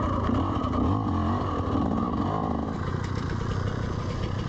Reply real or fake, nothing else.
real